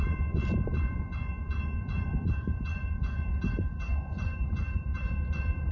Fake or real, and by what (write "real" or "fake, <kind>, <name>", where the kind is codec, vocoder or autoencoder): fake, vocoder, Vocos